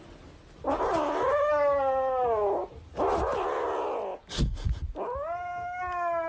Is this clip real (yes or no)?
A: yes